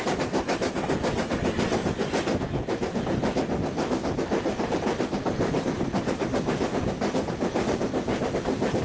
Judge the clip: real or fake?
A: real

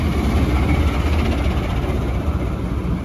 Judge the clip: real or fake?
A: real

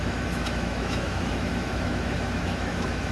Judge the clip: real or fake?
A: fake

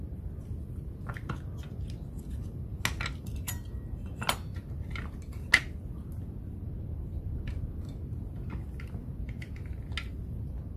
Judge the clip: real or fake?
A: real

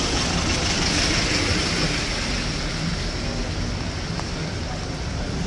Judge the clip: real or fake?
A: real